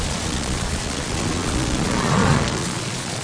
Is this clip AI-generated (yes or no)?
yes